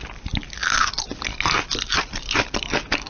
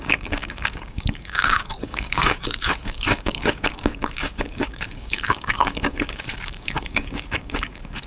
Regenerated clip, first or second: second